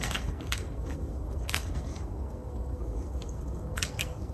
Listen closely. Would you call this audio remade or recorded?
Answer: remade